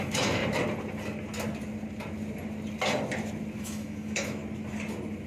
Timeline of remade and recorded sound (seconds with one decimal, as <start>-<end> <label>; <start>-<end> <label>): 0.0-0.4 remade; 0.4-3.6 recorded; 3.6-4.4 remade; 4.4-5.3 recorded